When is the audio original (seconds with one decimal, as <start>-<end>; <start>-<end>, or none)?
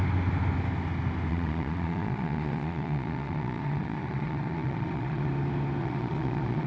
0.0-1.3; 5.3-5.8